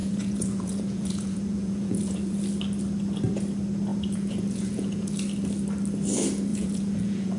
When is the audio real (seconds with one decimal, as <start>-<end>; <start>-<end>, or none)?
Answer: 2.4-3.9; 5.1-6.5